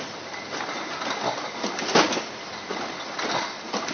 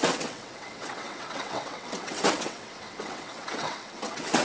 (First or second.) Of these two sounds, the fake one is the second